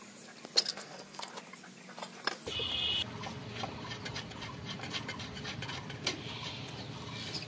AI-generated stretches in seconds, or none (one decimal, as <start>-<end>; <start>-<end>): 0.7-1.3